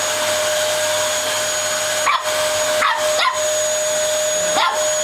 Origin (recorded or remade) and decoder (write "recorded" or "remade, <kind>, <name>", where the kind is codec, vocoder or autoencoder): recorded